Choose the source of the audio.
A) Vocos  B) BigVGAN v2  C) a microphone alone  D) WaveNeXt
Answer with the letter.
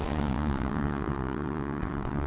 D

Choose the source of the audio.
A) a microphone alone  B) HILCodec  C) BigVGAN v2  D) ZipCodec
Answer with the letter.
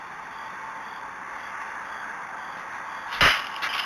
A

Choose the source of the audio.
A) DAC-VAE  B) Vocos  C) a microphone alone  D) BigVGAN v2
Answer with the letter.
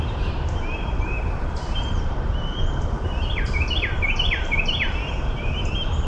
D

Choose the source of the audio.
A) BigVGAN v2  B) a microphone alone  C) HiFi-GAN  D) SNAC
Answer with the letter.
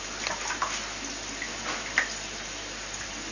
B